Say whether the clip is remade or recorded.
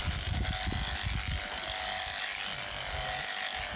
recorded